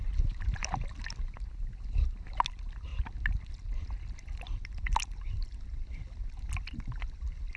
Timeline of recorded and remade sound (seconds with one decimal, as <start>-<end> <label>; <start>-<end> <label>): 0.0-7.6 recorded